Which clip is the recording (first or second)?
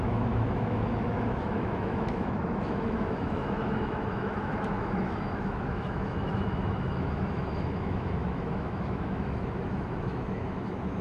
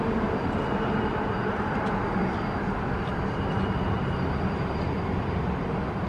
second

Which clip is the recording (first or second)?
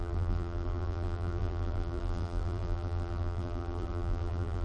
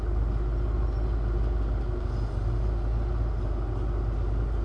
second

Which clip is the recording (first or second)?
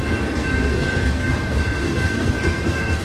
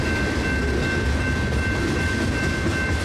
second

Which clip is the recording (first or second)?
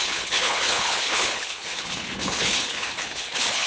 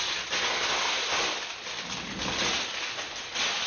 second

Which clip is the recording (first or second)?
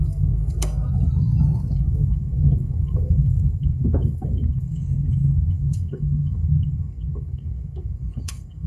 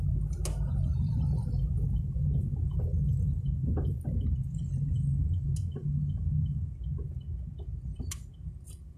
second